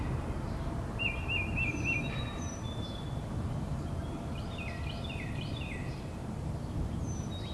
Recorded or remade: remade